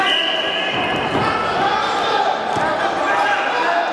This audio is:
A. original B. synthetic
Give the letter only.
A